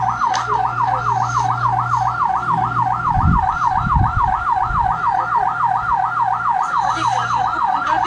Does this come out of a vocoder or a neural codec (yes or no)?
no